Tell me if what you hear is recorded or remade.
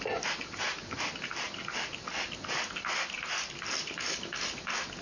recorded